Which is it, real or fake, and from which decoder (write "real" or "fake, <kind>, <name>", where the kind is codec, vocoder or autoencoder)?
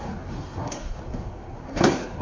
fake, codec, SNAC